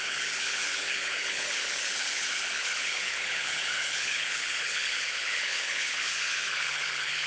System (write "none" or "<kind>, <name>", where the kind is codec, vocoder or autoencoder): codec, HILCodec